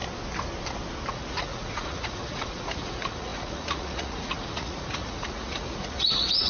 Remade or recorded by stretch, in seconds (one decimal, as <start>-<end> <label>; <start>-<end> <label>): 0.0-1.1 recorded; 1.1-6.5 remade